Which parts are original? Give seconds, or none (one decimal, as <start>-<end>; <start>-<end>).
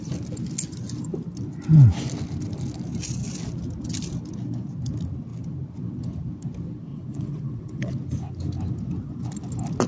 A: 0.0-6.9; 7.9-9.9